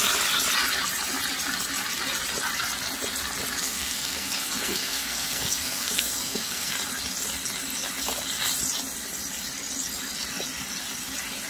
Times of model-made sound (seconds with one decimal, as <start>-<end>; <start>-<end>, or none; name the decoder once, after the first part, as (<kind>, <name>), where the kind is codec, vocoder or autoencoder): 3.6-6.7 (codec, SNAC)